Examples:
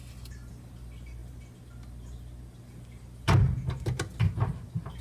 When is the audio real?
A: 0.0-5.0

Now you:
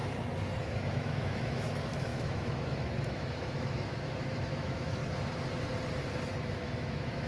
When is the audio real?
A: 0.0-0.6; 5.0-6.4

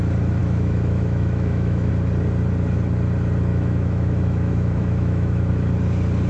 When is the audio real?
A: 0.0-0.4; 1.9-3.5; 5.5-6.3

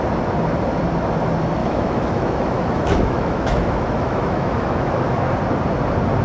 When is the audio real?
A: 0.0-1.6; 5.3-6.2

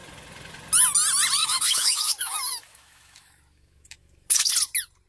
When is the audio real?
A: 0.0-1.4; 4.5-5.1